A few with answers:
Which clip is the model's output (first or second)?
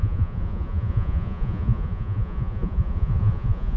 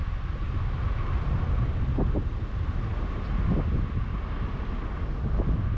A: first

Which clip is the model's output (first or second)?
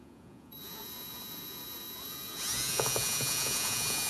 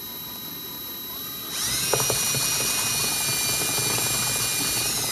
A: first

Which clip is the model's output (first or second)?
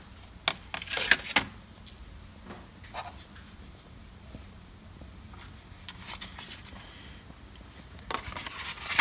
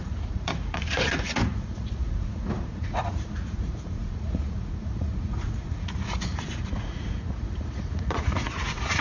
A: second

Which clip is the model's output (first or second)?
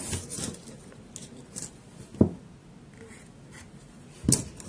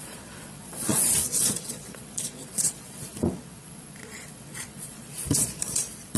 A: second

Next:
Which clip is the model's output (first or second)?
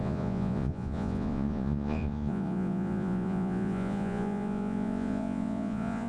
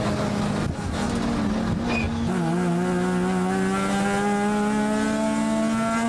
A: first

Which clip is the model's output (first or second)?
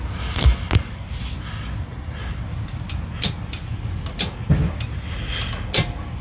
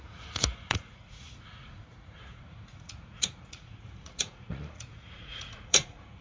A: second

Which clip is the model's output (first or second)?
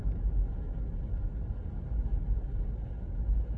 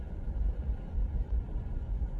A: second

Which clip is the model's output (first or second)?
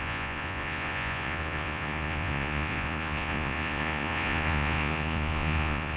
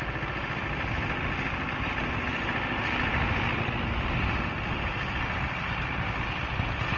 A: first